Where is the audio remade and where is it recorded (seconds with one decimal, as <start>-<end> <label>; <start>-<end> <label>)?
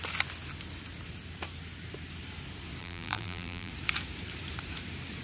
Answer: 0.0-2.8 recorded; 2.8-3.7 remade; 3.7-5.2 recorded